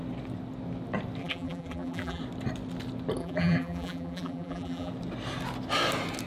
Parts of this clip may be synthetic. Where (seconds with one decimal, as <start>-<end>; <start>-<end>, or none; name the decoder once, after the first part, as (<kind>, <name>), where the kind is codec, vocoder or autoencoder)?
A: 1.2-2.2 (vocoder, BigVGAN v2); 3.2-4.9